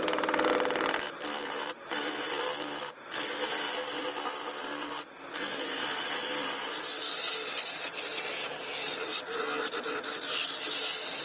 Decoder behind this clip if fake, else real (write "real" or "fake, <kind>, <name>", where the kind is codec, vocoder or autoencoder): real